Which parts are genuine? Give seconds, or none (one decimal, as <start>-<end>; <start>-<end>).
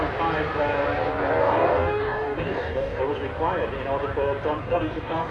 0.0-1.4; 3.0-4.6